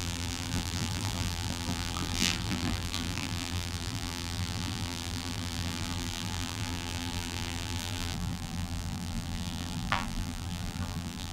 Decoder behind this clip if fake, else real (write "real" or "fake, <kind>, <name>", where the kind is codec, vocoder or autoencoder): fake, vocoder, BigVGAN v2